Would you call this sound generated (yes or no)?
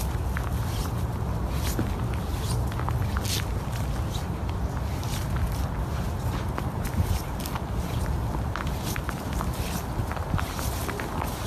no